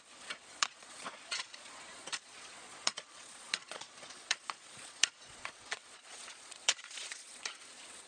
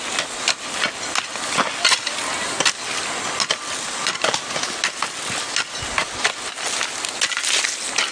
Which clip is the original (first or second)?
second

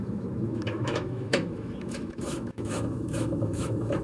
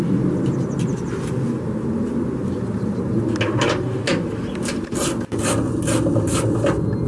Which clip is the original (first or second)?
second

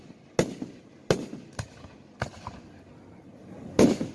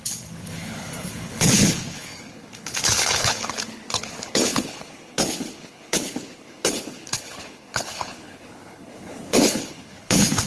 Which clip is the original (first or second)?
first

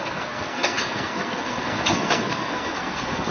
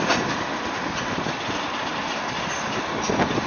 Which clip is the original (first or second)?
second